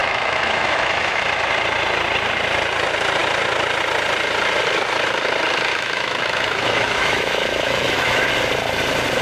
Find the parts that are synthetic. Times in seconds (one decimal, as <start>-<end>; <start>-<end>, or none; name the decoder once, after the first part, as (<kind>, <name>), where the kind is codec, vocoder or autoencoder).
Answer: 0.0-1.2 (autoencoder, DAC-VAE); 5.7-8.2